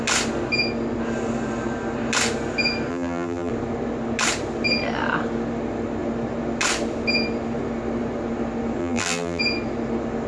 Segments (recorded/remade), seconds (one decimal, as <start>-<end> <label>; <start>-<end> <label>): 0.0-2.9 recorded; 2.9-3.5 remade; 3.5-8.8 recorded; 8.8-9.4 remade; 9.4-10.3 recorded